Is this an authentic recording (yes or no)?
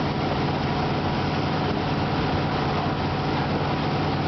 yes